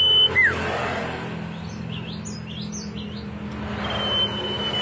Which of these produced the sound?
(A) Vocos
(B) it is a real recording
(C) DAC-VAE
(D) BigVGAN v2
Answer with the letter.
B